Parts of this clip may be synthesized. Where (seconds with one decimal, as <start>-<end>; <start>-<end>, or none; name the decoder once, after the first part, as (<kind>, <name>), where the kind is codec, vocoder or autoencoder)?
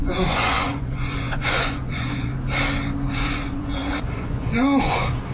0.0-2.3 (vocoder, Vocos); 3.1-5.3